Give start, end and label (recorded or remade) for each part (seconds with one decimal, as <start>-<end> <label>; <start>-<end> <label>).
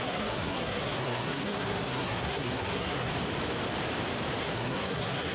0.0-3.1 remade; 3.1-4.4 recorded; 4.4-5.3 remade